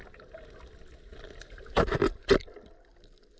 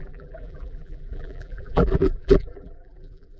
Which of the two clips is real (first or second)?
first